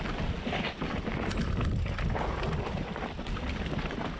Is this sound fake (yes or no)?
no